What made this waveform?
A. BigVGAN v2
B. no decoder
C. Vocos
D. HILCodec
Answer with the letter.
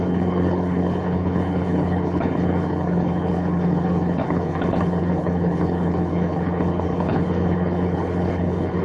D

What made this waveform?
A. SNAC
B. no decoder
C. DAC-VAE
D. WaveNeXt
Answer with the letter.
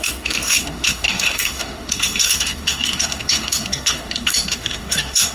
C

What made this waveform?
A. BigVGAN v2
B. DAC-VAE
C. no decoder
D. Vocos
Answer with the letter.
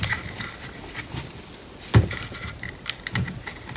C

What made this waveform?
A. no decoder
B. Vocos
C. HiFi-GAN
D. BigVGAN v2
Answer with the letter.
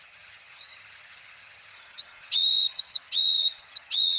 C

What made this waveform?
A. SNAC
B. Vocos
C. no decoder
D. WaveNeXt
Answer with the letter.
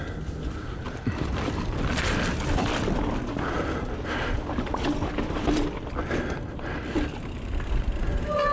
C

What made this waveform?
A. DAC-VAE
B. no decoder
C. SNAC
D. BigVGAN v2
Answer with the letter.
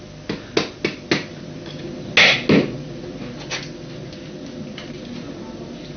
B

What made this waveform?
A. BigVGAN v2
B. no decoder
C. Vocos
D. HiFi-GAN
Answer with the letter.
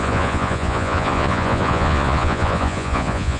C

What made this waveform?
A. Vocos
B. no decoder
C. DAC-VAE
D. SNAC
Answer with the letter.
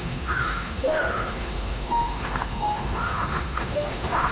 C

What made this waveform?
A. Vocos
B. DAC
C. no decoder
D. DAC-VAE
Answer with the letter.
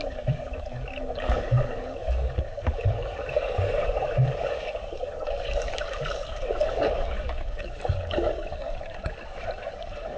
B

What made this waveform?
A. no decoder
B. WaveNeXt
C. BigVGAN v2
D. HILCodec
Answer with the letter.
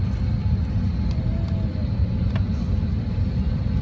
A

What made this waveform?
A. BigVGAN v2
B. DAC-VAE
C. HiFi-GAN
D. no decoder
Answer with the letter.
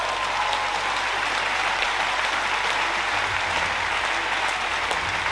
D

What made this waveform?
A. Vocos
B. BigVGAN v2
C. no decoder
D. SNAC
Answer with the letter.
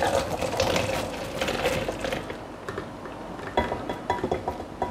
C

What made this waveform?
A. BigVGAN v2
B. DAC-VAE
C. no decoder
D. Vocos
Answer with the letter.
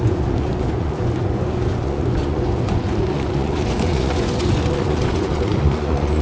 D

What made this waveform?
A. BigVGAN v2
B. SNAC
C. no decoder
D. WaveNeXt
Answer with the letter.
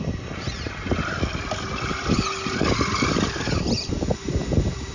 A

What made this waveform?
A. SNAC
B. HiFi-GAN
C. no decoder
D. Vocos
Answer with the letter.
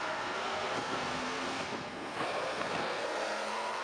A